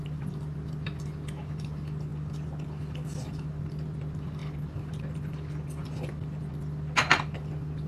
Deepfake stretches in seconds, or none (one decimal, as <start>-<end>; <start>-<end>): none